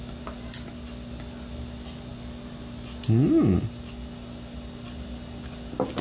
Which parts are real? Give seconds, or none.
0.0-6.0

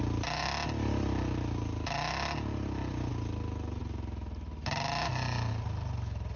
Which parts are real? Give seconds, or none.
0.0-6.4

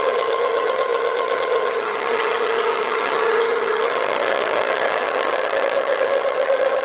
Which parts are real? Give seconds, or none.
none

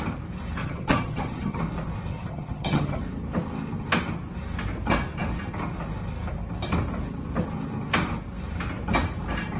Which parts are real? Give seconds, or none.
0.0-0.6; 1.6-2.1; 3.0-9.6

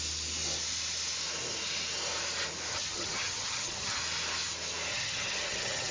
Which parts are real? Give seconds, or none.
0.0-2.7; 4.0-4.9